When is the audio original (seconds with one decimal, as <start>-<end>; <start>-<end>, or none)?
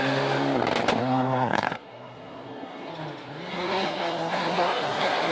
0.0-1.0; 2.9-3.5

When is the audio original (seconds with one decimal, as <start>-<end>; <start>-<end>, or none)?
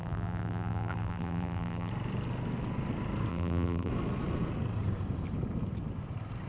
1.9-3.3; 3.9-6.5